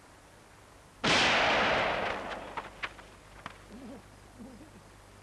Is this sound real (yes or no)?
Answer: yes